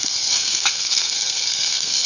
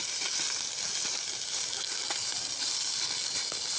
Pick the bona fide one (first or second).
second